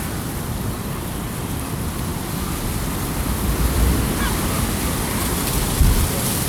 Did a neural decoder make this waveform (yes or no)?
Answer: no